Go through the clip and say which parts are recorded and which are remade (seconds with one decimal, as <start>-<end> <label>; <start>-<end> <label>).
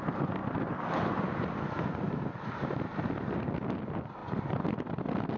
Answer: 0.0-0.4 recorded; 0.4-3.1 remade; 3.1-4.2 recorded; 4.2-5.0 remade; 5.0-5.4 recorded